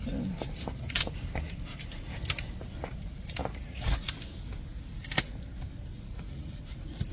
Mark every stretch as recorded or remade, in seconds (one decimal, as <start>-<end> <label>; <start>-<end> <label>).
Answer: 0.0-3.4 recorded; 3.4-4.1 remade; 4.1-5.9 recorded; 5.9-6.6 remade; 6.6-7.1 recorded